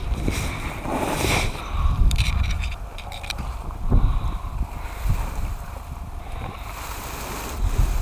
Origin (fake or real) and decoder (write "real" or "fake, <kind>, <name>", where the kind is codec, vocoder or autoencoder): fake, vocoder, BigVGAN v2